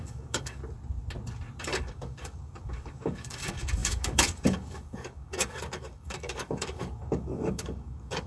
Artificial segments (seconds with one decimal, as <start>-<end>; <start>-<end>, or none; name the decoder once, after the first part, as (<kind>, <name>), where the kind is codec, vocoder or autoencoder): 0.0-0.6 (codec, DAC); 1.6-8.3